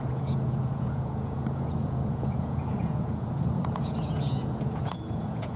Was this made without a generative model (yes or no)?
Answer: no